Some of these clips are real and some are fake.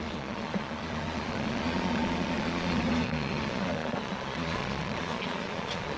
fake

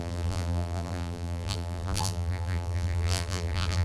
fake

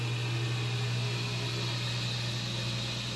real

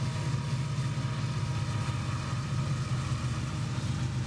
real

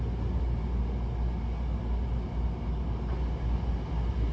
real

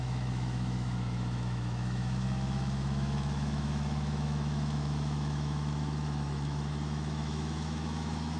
fake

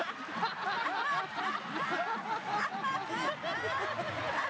fake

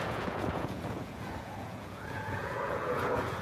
fake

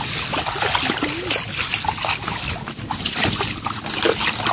real